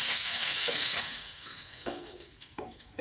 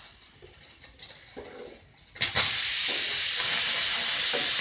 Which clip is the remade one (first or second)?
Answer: first